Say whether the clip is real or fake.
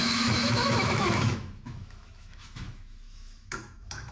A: fake